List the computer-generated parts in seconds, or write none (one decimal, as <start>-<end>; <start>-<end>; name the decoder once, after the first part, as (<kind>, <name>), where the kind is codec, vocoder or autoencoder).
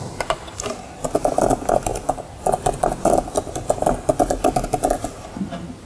none